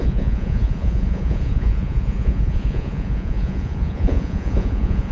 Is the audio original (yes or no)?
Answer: no